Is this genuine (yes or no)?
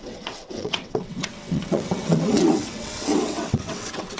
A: no